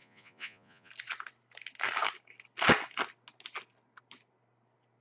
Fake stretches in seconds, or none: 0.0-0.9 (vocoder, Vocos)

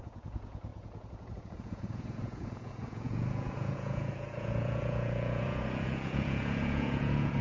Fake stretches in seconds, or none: 0.0-7.4 (vocoder, Vocos)

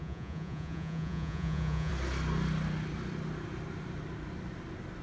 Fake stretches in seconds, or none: 0.0-1.9 (vocoder, Vocos)